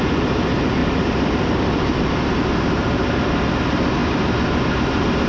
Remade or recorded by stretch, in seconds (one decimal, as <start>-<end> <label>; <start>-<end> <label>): 0.0-0.8 recorded; 0.8-2.0 remade; 2.0-2.8 recorded; 2.8-3.4 remade; 3.4-4.0 recorded; 4.0-5.3 remade